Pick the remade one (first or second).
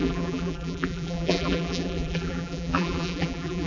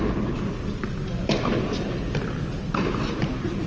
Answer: first